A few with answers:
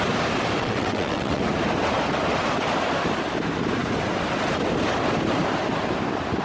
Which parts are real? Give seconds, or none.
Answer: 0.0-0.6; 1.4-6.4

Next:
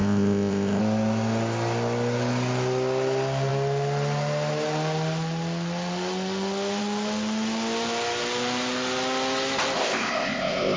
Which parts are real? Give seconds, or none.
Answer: 0.8-9.8

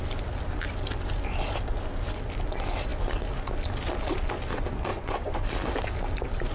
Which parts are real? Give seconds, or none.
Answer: 0.0-4.9; 5.4-6.5

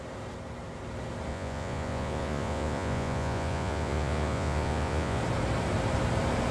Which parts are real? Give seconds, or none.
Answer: 0.0-1.3; 5.2-6.5

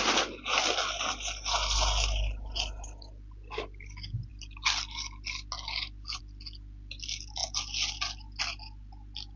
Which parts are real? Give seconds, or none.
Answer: 0.0-4.3; 6.2-9.4